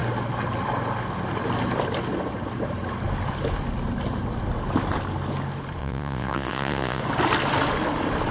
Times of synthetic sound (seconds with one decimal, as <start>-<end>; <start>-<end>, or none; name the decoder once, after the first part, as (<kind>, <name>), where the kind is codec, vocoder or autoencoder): 5.8-7.0 (vocoder, Vocos)